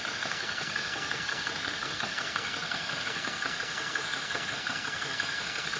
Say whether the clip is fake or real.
fake